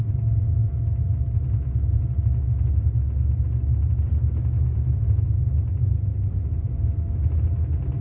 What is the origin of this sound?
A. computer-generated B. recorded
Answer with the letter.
B